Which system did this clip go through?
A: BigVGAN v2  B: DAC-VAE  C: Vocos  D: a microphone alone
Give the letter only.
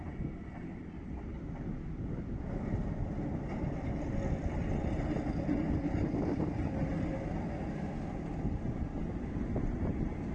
D